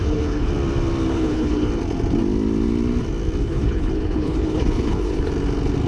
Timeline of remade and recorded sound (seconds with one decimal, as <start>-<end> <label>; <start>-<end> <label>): 0.0-0.5 remade; 0.5-1.1 recorded; 1.1-1.7 remade; 1.7-3.4 recorded; 3.4-5.3 remade; 5.3-5.9 recorded